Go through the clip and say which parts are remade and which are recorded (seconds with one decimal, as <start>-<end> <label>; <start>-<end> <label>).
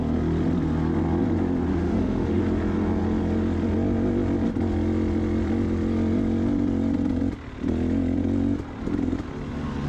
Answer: 0.0-1.7 recorded; 1.7-2.4 remade; 2.4-9.9 recorded